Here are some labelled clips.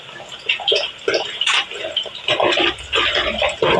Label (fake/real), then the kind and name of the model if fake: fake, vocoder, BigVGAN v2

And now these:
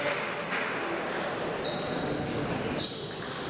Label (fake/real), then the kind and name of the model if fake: real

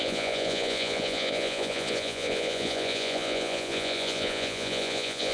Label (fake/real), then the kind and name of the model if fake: fake, vocoder, Vocos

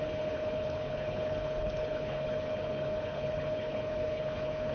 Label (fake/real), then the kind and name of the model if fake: fake, codec, HILCodec